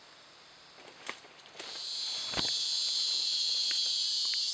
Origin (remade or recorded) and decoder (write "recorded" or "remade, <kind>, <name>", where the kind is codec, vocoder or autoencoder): recorded